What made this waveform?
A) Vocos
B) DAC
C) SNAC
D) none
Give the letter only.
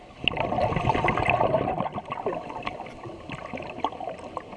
D